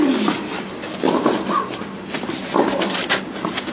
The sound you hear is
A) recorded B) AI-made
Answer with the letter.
A